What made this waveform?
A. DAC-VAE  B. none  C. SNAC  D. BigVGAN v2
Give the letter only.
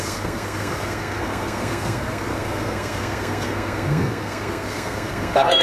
C